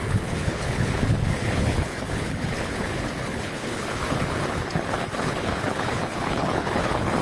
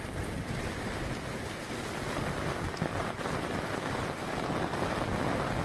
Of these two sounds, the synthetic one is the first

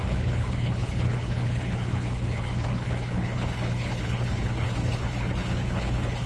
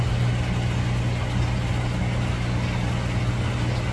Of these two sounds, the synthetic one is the first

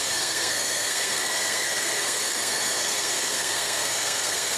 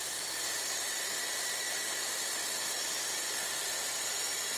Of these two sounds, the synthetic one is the first